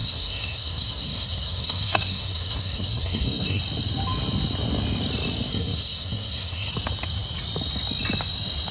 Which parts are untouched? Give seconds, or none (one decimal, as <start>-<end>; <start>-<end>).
3.6-5.5; 6.7-8.7